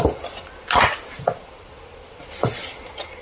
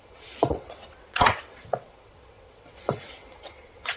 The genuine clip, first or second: first